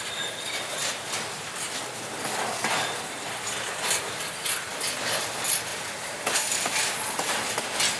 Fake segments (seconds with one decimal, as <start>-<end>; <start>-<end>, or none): none